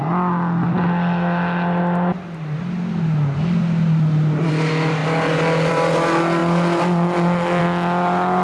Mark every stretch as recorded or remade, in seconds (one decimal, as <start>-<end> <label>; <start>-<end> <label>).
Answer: 0.0-8.4 recorded